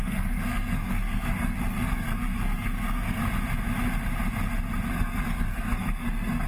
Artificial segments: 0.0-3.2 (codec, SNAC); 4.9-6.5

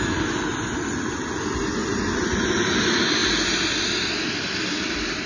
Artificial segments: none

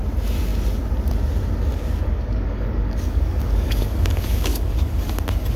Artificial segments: 1.7-5.1 (codec, DAC)